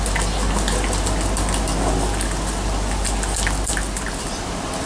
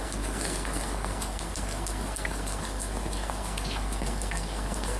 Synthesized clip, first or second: second